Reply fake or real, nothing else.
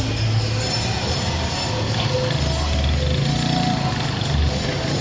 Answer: real